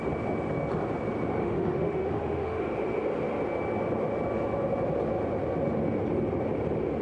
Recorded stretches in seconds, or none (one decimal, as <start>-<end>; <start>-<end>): 0.0-1.4; 2.6-7.0